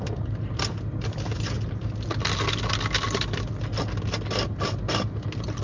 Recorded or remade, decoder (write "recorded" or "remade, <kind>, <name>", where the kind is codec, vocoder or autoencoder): recorded